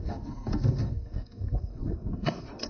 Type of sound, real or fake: fake